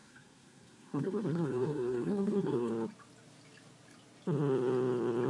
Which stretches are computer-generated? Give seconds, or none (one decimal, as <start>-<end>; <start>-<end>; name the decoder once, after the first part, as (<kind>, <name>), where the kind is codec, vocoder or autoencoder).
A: 0.0-2.7 (codec, SNAC)